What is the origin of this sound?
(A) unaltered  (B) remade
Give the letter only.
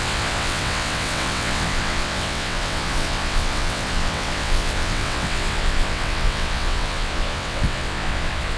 B